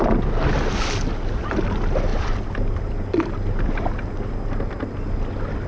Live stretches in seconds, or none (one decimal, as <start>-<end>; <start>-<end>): 0.0-5.7